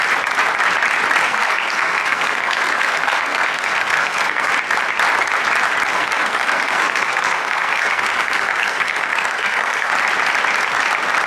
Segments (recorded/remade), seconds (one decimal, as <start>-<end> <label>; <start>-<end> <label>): 0.0-1.2 recorded; 1.2-4.5 remade; 4.5-5.9 recorded; 5.9-9.9 remade; 9.9-11.3 recorded